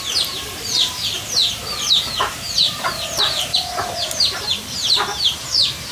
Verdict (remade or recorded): remade